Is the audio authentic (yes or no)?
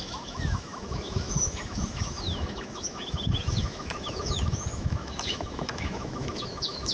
no